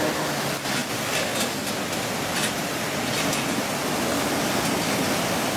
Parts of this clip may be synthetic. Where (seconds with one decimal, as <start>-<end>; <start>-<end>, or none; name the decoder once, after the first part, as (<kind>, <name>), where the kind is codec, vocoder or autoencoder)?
none